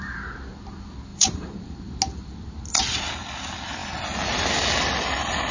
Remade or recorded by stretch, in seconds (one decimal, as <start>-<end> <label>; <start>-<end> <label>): 0.0-1.1 recorded; 1.1-1.8 remade; 1.8-5.5 recorded